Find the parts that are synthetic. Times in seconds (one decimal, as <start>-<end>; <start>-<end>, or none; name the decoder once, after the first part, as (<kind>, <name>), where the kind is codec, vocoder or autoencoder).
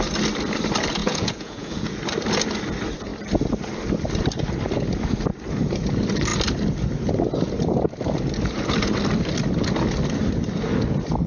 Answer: 1.0-2.0 (vocoder, Vocos)